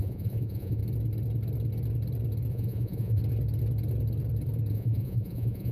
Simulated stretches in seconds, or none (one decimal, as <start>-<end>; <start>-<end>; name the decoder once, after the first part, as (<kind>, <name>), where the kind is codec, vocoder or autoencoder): 0.0-0.8 (vocoder, Vocos); 2.5-3.2; 4.7-5.7